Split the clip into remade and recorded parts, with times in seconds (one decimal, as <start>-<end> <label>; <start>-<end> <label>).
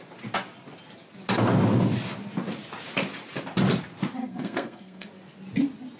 0.0-4.2 recorded; 4.2-5.1 remade; 5.1-6.0 recorded